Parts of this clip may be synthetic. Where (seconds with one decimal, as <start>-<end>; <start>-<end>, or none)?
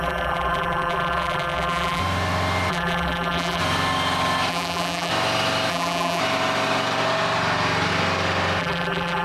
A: 0.0-2.0; 2.7-3.6; 4.5-5.1; 5.7-6.2; 8.6-9.2